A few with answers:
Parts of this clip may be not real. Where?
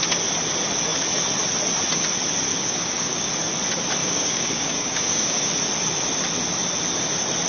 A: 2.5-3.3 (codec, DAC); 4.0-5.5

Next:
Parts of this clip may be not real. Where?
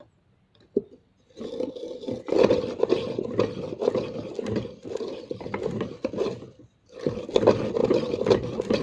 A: none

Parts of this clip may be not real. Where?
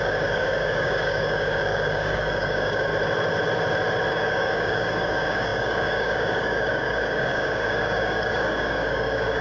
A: 0.0-2.9 (codec, DAC); 4.1-9.4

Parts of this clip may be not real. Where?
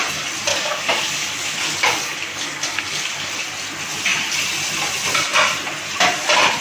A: 0.5-3.3 (codec, DAC)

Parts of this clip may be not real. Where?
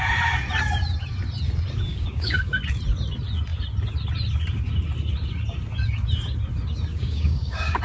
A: 1.9-2.5 (codec, DAC); 6.9-7.8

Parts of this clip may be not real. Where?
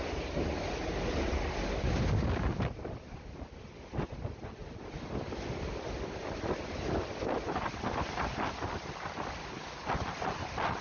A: none